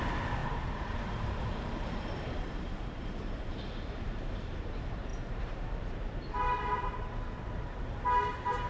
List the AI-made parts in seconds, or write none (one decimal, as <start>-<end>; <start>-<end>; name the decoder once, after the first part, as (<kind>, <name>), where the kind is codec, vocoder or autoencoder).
0.0-8.7 (vocoder, BigVGAN v2)